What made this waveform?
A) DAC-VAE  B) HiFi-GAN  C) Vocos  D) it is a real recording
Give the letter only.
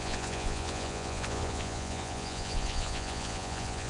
C